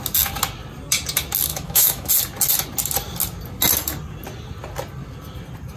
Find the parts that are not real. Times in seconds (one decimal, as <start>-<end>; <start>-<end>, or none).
1.5-2.1